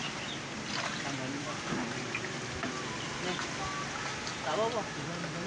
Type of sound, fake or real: real